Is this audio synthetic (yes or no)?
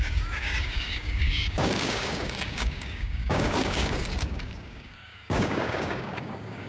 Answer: yes